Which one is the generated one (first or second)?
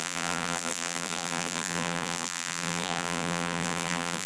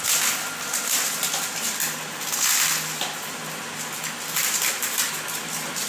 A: first